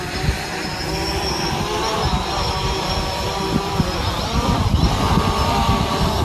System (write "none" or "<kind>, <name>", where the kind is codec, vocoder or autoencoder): none